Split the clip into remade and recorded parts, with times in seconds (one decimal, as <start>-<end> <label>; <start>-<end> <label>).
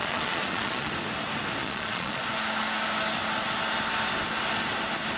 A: 0.0-0.9 remade; 0.9-1.6 recorded; 1.6-2.2 remade; 2.2-5.2 recorded